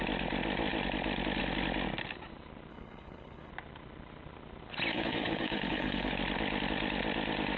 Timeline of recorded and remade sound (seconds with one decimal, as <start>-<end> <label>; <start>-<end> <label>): 0.0-2.7 recorded; 2.7-3.5 remade; 3.5-4.9 recorded; 4.9-6.1 remade; 6.1-7.6 recorded